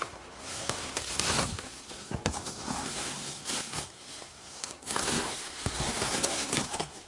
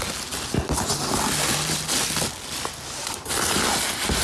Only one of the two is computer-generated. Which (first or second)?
first